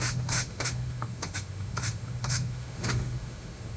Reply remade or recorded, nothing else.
remade